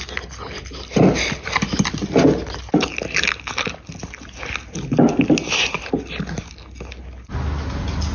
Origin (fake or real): real